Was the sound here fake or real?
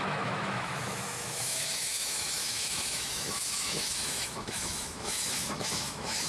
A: fake